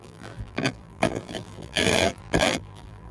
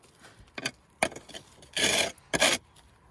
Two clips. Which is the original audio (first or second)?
second